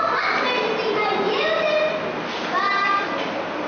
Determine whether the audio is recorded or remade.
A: recorded